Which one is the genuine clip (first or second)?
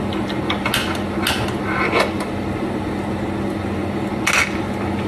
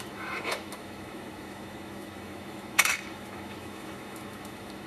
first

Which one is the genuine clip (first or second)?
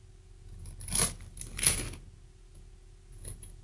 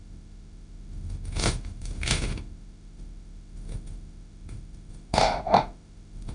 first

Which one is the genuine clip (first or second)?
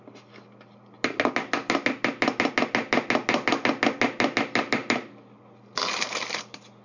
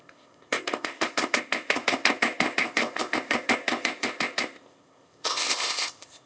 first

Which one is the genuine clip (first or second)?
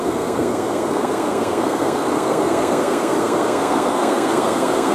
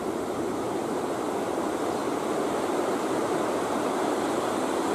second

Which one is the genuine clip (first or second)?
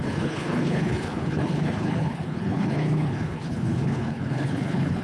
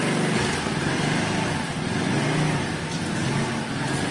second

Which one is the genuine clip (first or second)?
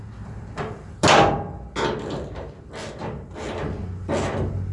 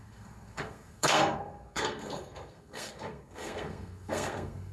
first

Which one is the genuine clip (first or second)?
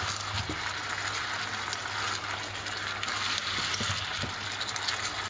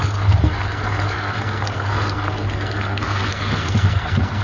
first